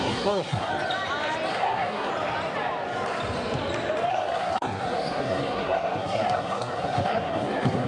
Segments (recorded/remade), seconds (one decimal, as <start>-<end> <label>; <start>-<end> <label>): 0.0-0.7 remade; 0.7-1.5 recorded; 1.5-2.1 remade; 2.1-4.1 recorded; 4.1-7.9 remade